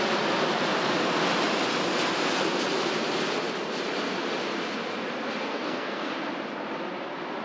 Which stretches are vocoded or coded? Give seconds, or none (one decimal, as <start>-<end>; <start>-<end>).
5.5-6.1